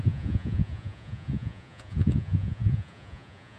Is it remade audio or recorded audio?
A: remade